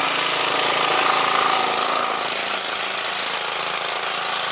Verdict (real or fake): real